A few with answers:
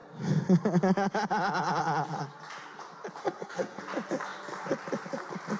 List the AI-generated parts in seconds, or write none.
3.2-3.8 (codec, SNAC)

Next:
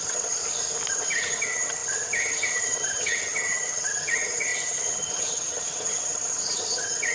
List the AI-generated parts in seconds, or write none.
0.0-0.4 (vocoder, HiFi-GAN); 0.9-7.1